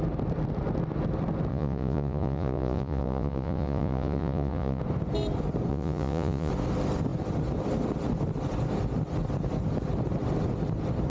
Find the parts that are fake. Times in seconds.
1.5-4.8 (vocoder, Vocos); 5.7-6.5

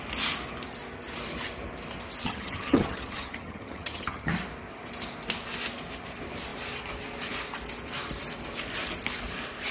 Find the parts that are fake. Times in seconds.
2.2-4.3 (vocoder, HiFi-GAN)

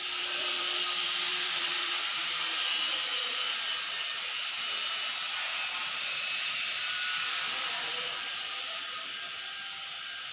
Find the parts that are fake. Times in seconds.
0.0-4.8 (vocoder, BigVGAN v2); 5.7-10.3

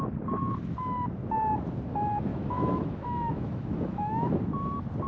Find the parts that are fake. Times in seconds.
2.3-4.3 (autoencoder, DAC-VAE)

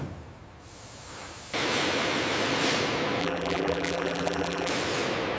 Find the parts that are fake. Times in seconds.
3.2-4.7 (vocoder, BigVGAN v2)

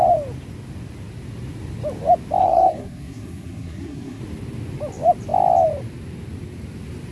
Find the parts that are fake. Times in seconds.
2.4-4.2 (codec, SNAC)

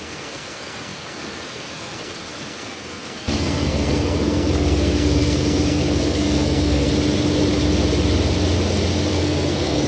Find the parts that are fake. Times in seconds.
0.0-6.9 (codec, SNAC); 9.1-9.9